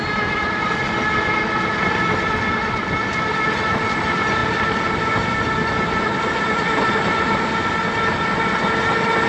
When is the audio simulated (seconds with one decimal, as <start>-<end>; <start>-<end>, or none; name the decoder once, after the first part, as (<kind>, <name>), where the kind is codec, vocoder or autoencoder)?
none